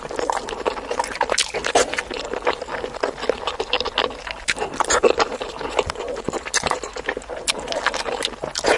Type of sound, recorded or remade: recorded